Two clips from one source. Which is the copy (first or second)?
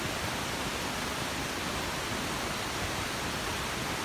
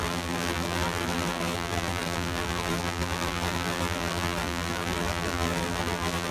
second